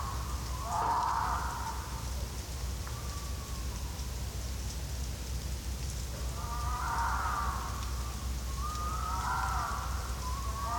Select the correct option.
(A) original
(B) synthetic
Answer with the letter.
A